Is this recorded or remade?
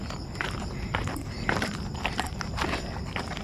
recorded